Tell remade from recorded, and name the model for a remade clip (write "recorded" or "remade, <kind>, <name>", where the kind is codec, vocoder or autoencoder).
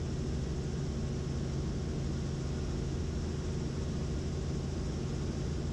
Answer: recorded